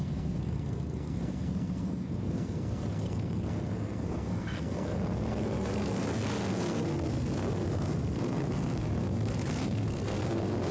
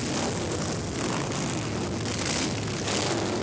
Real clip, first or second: second